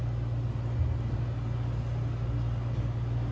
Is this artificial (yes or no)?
no